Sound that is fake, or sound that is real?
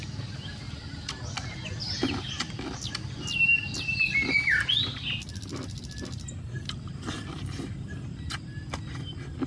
real